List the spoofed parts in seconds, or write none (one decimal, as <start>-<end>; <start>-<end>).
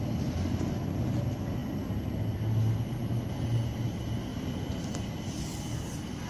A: none